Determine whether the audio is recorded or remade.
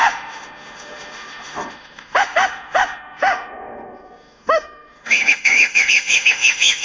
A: remade